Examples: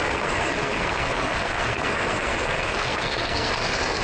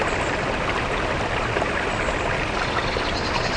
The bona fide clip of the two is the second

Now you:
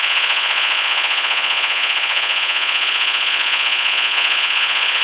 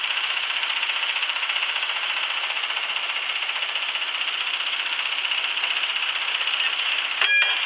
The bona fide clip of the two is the second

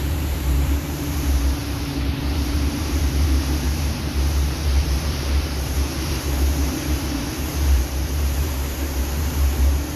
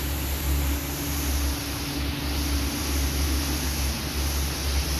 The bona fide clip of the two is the second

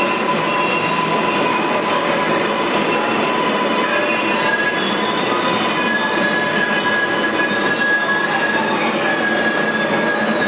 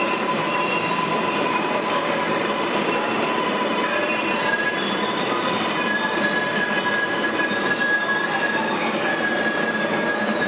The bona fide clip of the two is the first